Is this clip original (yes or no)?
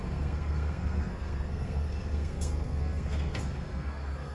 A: no